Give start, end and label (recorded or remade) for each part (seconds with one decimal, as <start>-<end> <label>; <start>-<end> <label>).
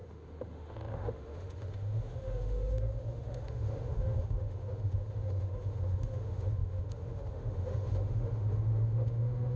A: 0.0-9.6 remade